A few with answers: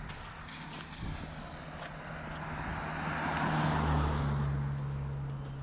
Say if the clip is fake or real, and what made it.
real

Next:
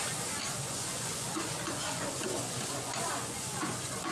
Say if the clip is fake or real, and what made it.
fake, vocoder, Vocos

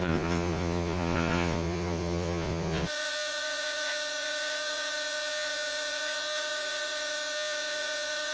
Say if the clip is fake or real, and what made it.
fake, vocoder, Vocos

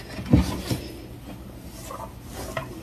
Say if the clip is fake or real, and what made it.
real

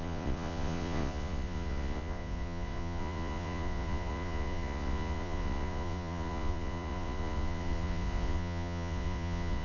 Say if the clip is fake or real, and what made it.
fake, vocoder, Vocos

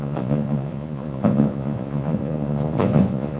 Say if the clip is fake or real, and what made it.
fake, vocoder, Vocos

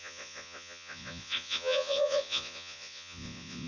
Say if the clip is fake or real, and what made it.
fake, vocoder, Vocos